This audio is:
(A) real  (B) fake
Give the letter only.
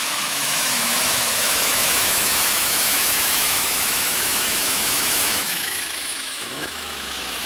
B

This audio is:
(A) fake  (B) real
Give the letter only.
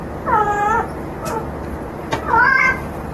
B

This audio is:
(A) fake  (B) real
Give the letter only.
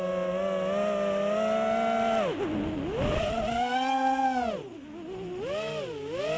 B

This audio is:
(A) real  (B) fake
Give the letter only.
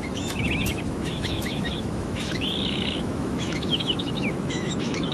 B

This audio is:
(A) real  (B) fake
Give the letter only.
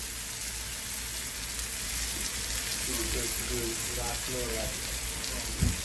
A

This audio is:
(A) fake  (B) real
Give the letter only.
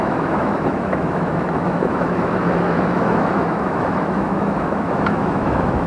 A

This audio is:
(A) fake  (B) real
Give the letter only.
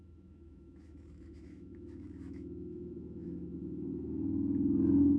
A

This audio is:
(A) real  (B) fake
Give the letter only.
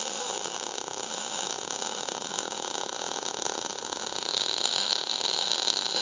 B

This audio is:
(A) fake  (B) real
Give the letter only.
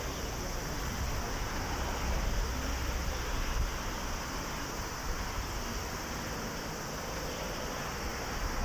B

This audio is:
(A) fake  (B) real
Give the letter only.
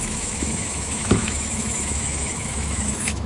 A